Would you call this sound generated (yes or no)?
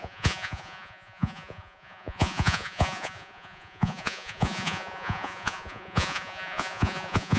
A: yes